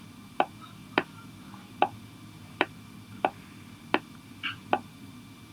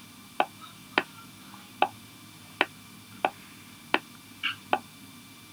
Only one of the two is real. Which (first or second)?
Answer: second